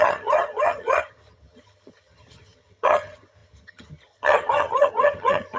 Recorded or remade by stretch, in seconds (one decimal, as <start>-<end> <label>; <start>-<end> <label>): 0.0-5.6 remade